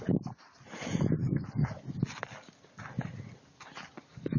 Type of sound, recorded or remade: recorded